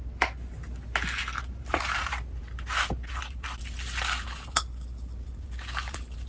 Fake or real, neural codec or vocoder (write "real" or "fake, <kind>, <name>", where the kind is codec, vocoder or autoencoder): real